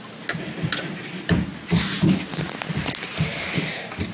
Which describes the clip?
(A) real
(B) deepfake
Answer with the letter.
A